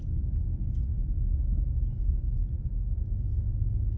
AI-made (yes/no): yes